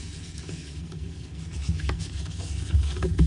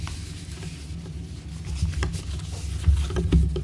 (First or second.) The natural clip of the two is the second